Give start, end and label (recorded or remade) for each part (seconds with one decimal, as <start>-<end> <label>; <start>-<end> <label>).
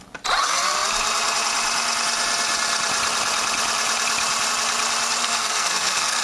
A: 0.0-5.2 recorded; 5.2-6.2 remade